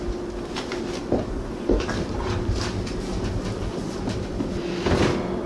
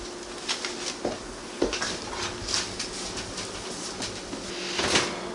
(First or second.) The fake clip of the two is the first